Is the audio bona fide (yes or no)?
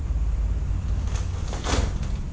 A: yes